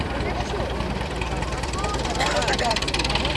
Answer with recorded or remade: remade